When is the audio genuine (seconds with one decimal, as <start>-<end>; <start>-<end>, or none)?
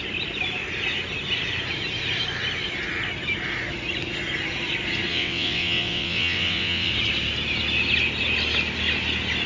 0.0-5.1; 6.9-9.5